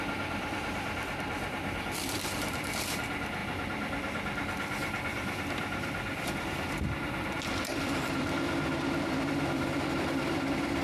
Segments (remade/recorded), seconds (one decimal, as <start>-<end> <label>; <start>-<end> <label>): 0.0-10.8 remade